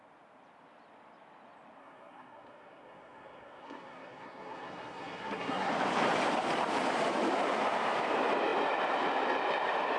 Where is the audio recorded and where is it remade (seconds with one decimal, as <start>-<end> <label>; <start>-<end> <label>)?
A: 0.0-1.8 recorded; 1.8-5.7 remade; 5.7-10.0 recorded